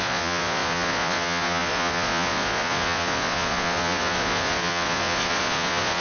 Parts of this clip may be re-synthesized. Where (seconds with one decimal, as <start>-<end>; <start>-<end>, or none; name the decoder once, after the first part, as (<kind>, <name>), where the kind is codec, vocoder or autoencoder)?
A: 0.0-6.0 (vocoder, Vocos)